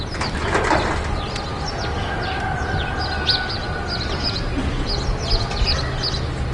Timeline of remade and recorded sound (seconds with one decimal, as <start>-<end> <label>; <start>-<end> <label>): 0.0-6.5 recorded